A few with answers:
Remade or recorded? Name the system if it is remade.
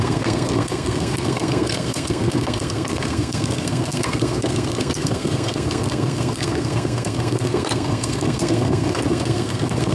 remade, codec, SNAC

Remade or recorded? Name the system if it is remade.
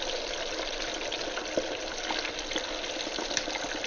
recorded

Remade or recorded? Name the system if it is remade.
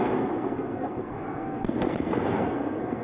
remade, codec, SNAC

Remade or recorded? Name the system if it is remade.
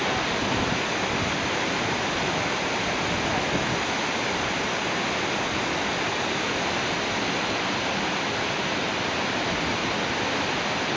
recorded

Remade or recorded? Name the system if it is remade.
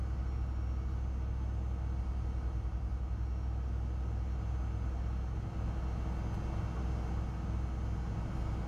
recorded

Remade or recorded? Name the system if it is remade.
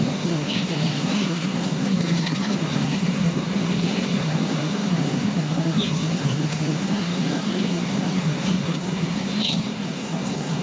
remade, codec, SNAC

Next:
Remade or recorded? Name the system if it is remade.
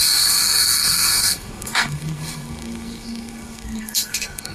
remade, codec, SNAC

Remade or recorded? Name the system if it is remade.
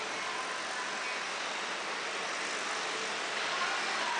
recorded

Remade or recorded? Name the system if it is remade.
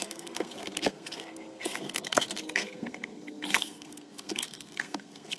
remade, codec, SNAC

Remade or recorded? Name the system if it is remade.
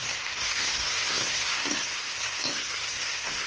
remade, codec, SNAC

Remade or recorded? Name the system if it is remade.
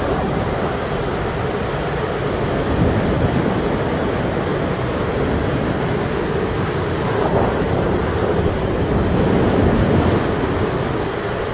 recorded